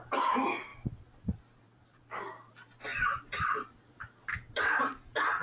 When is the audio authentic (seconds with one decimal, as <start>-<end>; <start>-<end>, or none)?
0.0-0.7; 2.5-2.9; 4.0-5.4